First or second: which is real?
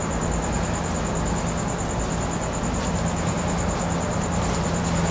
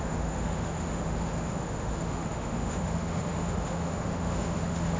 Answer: first